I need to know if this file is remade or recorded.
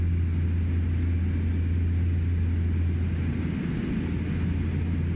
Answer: recorded